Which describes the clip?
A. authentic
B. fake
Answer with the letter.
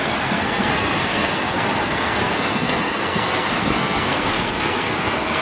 B